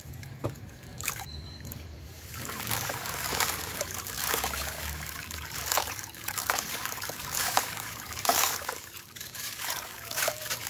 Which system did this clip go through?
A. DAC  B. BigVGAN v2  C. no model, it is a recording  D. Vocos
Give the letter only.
A